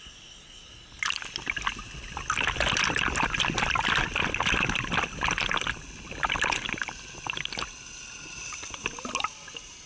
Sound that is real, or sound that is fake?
real